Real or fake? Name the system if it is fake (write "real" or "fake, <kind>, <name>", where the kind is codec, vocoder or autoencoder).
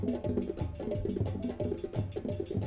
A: real